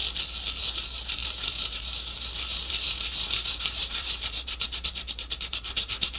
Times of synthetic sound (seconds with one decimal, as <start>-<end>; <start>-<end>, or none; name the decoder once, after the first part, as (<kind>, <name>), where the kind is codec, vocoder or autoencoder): 0.6-6.2 (vocoder, BigVGAN v2)